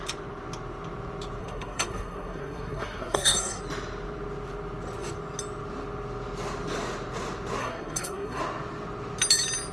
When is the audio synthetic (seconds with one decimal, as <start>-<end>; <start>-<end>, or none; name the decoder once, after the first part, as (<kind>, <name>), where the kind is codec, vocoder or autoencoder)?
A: 1.4-3.6 (codec, SNAC); 7.6-8.4